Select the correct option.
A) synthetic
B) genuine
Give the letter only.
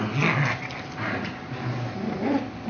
B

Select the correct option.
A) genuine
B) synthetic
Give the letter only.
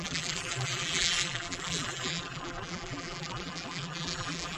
B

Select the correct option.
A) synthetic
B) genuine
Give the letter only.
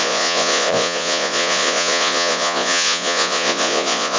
A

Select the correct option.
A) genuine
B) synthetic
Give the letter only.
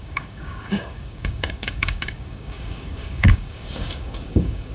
B